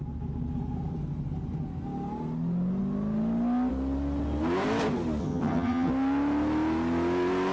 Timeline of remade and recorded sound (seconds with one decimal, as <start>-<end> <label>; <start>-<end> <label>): 0.0-5.2 recorded; 5.2-5.9 remade; 5.9-7.5 recorded